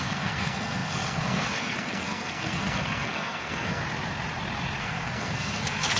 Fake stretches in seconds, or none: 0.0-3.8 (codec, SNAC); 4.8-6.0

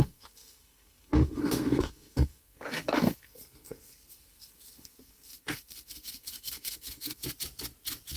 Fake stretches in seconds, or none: 0.0-7.2 (codec, SNAC)

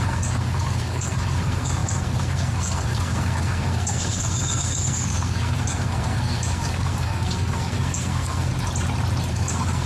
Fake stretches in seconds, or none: 0.0-8.5 (codec, SNAC); 9.3-9.9

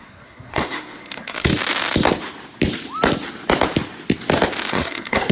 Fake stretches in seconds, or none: 0.0-1.5 (codec, SNAC); 4.7-5.3